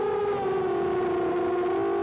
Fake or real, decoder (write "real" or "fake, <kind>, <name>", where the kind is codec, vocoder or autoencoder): real